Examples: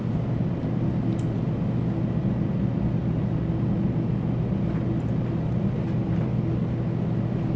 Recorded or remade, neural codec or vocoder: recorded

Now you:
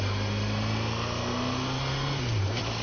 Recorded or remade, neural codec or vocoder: recorded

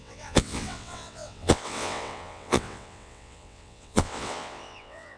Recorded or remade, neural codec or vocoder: remade, vocoder, WaveNeXt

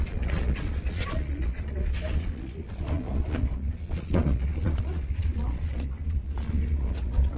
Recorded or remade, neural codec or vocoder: remade, vocoder, Vocos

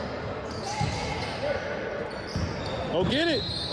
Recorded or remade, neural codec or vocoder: recorded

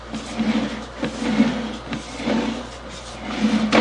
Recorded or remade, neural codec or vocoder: recorded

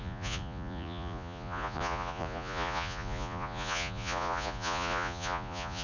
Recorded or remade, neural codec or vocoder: remade, vocoder, Vocos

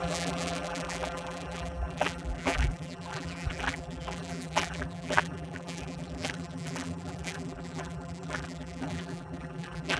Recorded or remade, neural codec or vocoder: remade, vocoder, BigVGAN v2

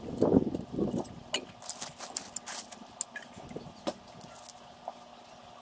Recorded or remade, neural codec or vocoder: recorded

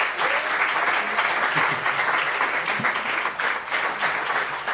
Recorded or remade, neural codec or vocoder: recorded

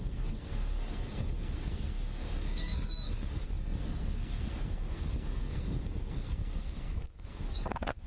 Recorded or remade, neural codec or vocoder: remade, codec, SNAC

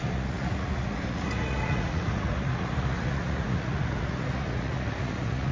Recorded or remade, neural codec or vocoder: remade, vocoder, Vocos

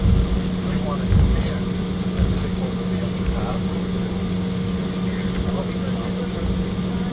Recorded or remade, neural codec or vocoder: recorded